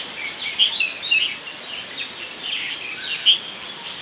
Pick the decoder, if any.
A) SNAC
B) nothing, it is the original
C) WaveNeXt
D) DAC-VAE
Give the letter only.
B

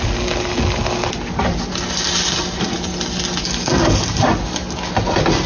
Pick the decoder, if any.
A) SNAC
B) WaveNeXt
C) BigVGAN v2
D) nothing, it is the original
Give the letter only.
D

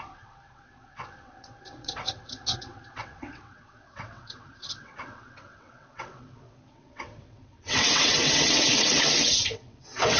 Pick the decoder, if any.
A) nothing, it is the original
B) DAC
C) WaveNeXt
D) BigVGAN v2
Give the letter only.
C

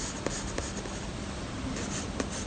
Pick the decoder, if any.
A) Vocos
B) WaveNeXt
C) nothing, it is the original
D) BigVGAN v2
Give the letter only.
C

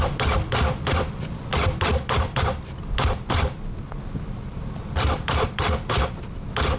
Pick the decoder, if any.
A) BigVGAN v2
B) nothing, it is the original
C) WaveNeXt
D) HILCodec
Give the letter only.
B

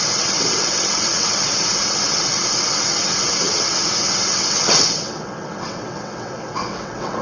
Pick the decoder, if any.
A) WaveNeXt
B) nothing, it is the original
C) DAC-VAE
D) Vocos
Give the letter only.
A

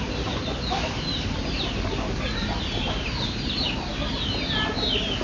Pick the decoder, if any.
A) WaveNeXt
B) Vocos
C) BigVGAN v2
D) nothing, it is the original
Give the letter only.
D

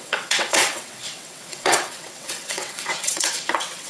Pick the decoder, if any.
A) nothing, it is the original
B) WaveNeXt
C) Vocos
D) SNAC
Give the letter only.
B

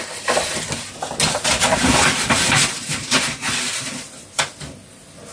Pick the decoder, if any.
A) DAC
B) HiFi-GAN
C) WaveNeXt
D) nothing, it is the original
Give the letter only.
D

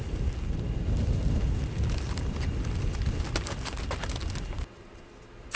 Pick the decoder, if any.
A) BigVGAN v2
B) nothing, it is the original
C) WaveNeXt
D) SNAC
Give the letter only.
B